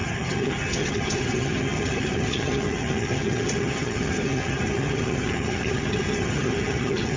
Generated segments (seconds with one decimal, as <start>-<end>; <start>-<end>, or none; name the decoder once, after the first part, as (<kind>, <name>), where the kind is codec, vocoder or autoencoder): 0.0-7.2 (vocoder, HiFi-GAN)